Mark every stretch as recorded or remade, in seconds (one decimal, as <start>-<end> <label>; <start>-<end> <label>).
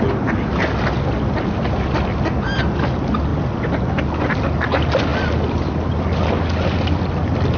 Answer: 0.0-7.6 recorded